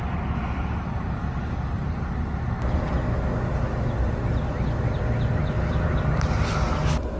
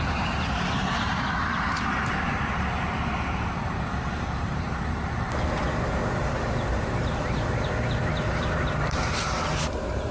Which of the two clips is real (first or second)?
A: first